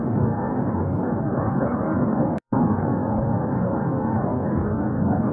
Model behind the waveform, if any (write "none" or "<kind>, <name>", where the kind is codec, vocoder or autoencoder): codec, DAC